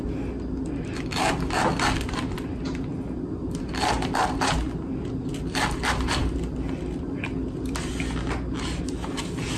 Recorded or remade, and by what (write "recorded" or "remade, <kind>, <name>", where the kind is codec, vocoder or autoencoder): recorded